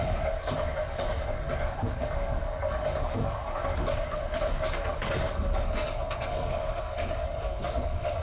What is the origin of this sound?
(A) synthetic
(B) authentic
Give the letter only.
A